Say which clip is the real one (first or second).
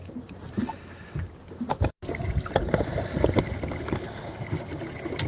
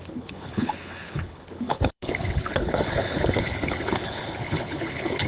first